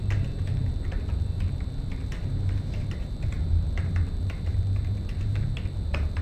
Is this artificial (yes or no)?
yes